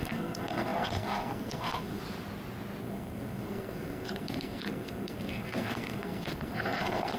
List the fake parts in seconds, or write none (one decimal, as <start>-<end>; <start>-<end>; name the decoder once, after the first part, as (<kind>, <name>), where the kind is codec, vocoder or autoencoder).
0.0-2.0 (codec, SNAC); 2.8-7.2